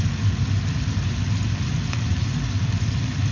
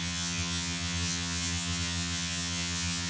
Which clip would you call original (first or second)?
first